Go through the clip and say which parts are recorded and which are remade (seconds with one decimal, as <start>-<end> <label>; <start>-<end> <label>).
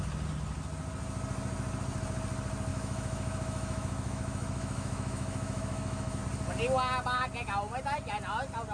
0.0-2.7 recorded; 2.7-6.2 remade; 6.2-8.7 recorded